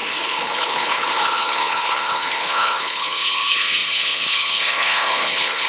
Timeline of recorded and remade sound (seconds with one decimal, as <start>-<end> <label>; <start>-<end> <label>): 0.0-5.7 remade